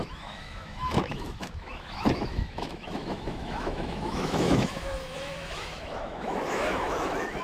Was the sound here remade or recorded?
remade